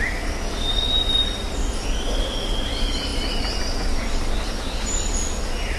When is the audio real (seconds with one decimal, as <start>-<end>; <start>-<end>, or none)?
0.0-5.8